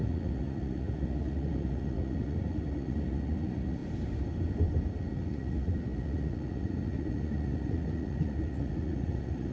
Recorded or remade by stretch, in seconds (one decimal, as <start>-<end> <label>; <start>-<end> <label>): 0.0-3.8 remade; 3.8-5.0 recorded; 5.0-9.5 remade